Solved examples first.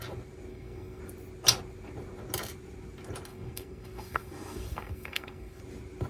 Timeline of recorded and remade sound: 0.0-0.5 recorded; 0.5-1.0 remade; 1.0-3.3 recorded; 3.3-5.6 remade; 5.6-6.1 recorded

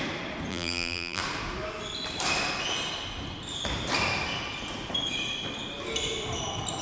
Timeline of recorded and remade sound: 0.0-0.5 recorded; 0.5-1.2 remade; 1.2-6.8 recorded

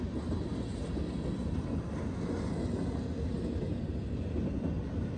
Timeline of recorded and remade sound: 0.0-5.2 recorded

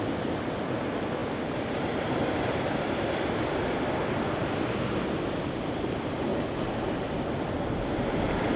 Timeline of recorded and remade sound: 0.0-8.6 recorded